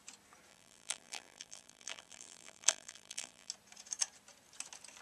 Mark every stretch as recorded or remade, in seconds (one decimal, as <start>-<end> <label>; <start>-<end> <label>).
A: 0.0-0.5 recorded; 0.5-3.5 remade; 3.5-5.0 recorded